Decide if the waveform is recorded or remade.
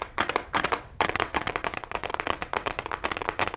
remade